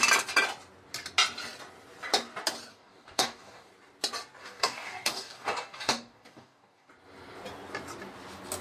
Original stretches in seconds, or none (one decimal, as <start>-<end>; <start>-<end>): 0.0-2.7; 3.7-4.4; 6.9-8.6